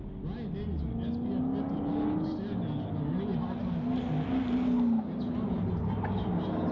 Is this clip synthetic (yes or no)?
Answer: no